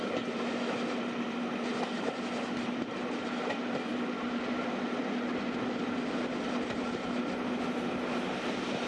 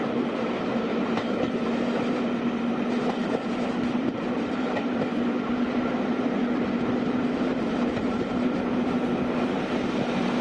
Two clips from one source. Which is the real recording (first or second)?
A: first